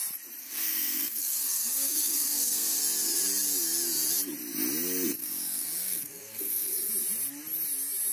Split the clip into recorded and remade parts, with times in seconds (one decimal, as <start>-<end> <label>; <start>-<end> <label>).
0.0-0.4 recorded; 0.4-2.8 remade; 2.8-5.2 recorded; 5.2-6.9 remade; 6.9-8.1 recorded